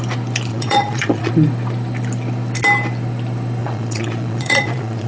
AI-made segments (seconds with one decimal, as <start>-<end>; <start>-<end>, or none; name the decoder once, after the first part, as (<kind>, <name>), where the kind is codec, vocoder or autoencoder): 0.5-1.3 (vocoder, Vocos); 3.6-5.1